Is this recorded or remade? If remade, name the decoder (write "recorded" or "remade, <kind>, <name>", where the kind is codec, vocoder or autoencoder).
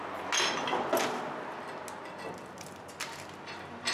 recorded